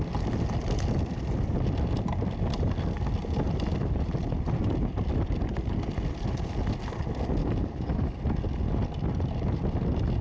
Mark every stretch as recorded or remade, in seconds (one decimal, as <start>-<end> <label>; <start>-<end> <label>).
0.0-7.4 recorded; 7.4-8.2 remade; 8.2-10.2 recorded